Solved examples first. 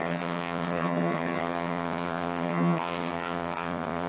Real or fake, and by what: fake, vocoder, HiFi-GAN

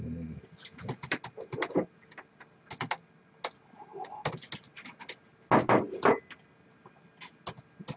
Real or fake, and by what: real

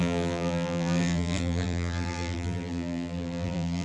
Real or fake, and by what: fake, vocoder, BigVGAN v2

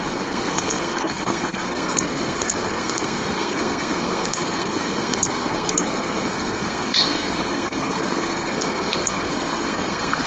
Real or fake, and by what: fake, codec, SNAC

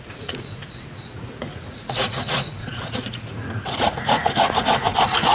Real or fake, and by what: fake, vocoder, Vocos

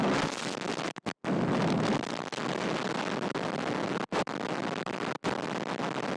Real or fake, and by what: real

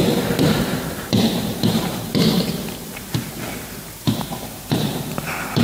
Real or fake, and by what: fake, vocoder, BigVGAN v2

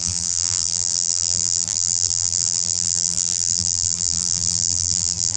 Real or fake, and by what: fake, vocoder, BigVGAN v2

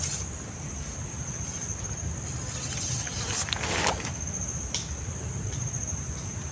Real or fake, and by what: real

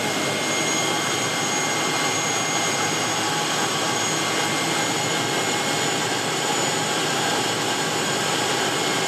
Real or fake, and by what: real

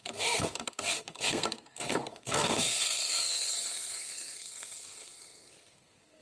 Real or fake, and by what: fake, codec, SNAC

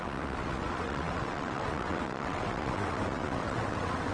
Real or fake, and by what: fake, vocoder, WaveNeXt